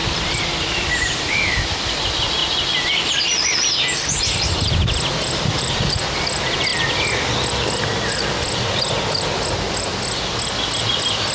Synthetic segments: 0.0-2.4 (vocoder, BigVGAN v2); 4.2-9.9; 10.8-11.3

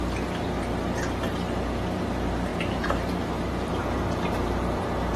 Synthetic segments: 2.5-4.8 (vocoder, BigVGAN v2)

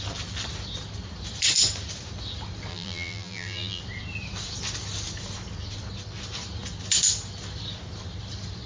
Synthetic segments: 2.7-3.8 (vocoder, BigVGAN v2)